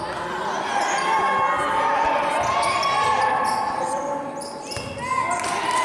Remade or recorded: recorded